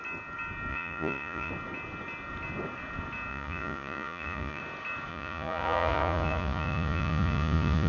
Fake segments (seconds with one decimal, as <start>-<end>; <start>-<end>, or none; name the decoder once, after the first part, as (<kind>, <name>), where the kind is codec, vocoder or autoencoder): 0.7-1.5 (vocoder, Vocos); 3.3-4.6; 5.1-7.9